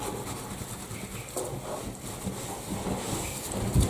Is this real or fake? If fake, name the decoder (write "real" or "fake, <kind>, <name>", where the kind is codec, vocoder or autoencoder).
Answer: real